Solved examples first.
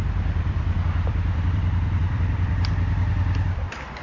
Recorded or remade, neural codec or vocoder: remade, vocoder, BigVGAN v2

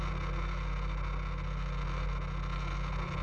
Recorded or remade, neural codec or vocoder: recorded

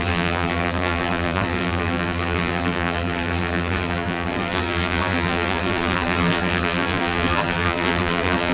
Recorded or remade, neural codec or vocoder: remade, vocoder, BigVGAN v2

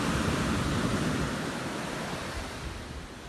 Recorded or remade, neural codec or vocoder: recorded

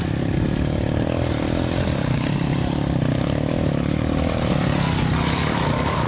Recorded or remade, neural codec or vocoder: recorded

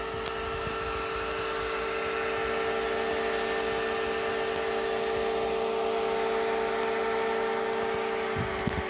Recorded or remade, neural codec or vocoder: recorded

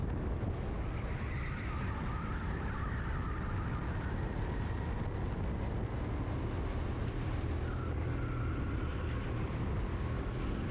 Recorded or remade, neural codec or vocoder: recorded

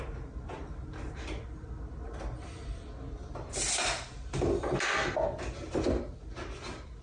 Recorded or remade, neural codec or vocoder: recorded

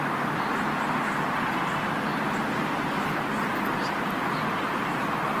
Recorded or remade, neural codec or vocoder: recorded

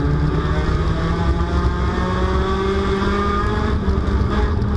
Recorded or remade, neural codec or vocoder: recorded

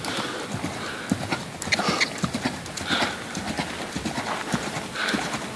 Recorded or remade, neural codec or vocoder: recorded